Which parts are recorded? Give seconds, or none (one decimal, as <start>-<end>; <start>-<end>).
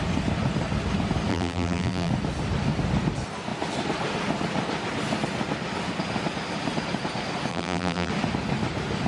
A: 0.0-1.3; 2.1-7.5; 8.1-9.1